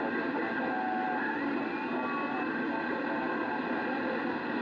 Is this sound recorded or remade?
recorded